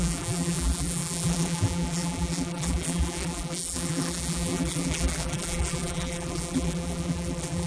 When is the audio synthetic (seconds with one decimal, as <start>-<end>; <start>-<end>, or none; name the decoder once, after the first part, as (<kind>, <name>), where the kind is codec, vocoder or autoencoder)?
0.0-7.7 (vocoder, BigVGAN v2)